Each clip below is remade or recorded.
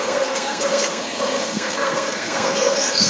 remade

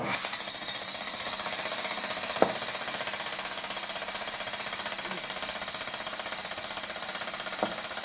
recorded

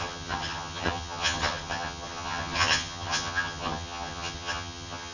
remade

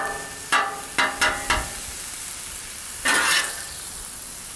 recorded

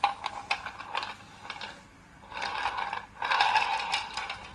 recorded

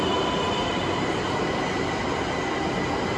recorded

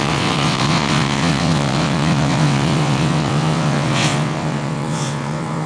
remade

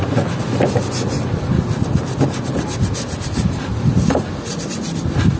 recorded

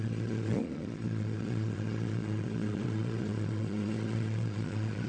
remade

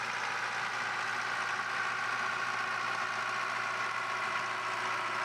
recorded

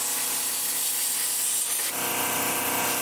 recorded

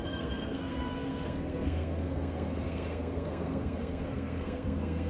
remade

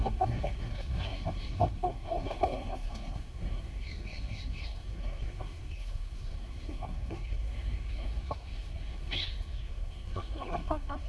remade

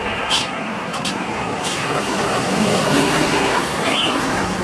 remade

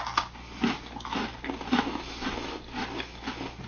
recorded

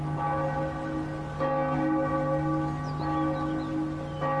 recorded